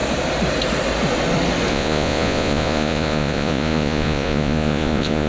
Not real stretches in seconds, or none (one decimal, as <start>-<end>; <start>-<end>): 1.7-5.3